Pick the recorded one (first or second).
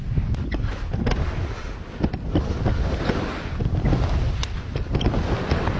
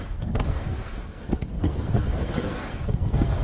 first